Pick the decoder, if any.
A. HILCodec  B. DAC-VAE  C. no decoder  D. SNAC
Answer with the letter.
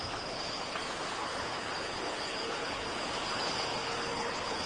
A